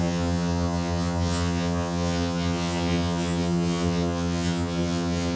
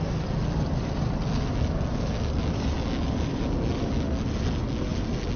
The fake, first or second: first